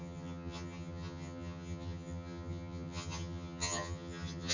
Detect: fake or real fake